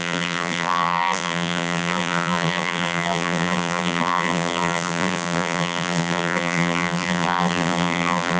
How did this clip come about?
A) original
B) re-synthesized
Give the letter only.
B